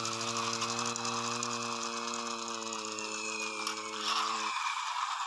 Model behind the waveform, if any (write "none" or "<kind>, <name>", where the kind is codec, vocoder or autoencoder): none